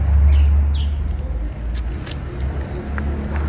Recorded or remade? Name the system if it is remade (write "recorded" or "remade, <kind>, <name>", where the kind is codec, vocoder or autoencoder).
recorded